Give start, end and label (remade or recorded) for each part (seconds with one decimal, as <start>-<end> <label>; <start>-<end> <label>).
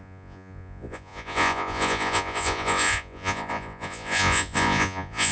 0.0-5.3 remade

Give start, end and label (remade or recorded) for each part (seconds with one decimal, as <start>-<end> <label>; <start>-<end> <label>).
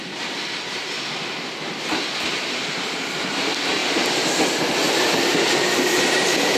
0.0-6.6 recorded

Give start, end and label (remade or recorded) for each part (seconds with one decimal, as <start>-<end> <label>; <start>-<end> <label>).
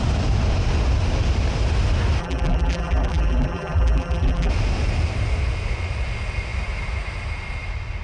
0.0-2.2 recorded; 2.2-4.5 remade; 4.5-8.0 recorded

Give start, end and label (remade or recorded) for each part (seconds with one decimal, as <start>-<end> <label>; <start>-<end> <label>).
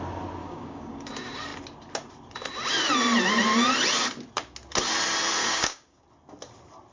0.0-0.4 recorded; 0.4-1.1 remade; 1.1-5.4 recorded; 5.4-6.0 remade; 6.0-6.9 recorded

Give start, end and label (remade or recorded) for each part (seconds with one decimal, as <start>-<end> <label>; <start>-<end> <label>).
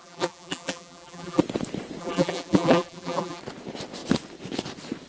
0.0-1.4 remade; 1.4-2.0 recorded; 2.0-3.4 remade; 3.4-5.1 recorded